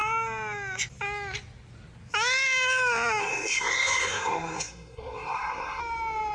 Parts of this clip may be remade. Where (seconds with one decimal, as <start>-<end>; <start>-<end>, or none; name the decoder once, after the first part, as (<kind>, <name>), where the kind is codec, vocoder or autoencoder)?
3.2-5.8 (codec, SNAC)